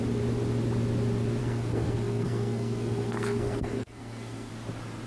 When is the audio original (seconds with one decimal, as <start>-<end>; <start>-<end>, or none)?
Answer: 0.0-1.4; 4.5-5.1